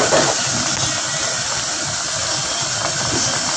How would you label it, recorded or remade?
recorded